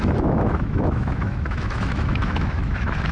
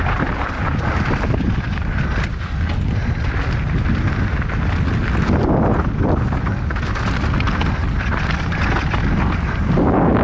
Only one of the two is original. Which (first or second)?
second